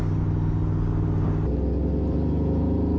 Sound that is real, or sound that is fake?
real